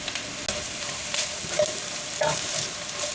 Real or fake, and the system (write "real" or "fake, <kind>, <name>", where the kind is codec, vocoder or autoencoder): real